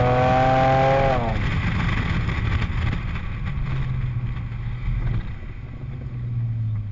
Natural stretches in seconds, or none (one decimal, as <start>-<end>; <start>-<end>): 0.0-6.9